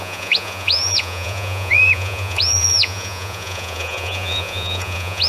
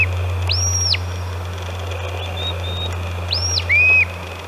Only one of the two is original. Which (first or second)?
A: second